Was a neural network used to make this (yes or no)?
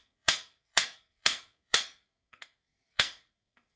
yes